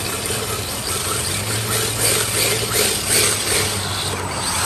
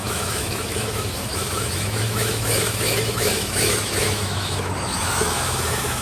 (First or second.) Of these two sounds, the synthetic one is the second